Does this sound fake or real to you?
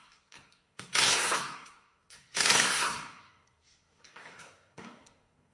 fake